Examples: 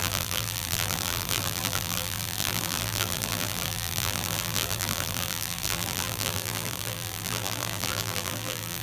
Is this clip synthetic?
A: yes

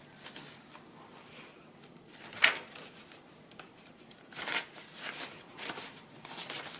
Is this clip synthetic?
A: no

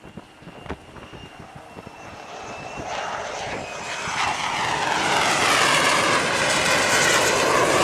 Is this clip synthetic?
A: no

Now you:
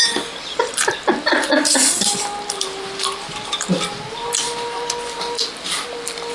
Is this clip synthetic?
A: yes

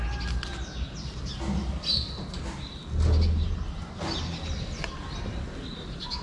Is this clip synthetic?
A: no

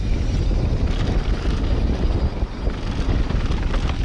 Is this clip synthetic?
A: no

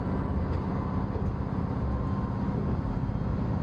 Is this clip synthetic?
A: no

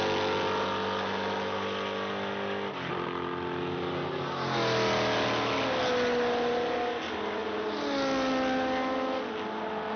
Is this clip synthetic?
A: no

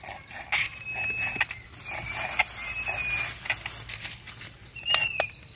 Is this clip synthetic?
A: yes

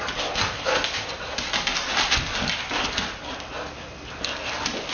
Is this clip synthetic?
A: no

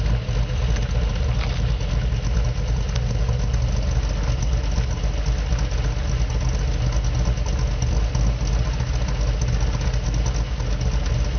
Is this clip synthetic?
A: no